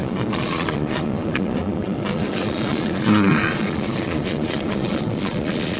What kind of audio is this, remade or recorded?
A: remade